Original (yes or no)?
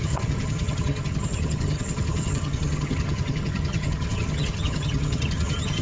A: no